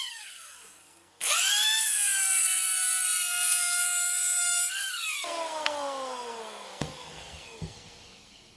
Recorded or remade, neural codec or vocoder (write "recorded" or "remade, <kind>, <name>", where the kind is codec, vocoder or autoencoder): remade, codec, SNAC